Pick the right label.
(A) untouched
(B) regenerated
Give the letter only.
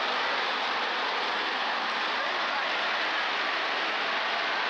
A